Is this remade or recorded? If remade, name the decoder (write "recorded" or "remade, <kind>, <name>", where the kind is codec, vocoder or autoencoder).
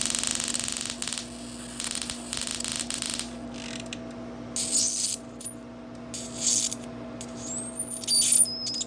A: recorded